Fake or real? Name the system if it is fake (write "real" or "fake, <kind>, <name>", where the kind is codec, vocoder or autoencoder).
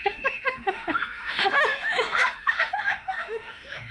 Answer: fake, autoencoder, DAC-VAE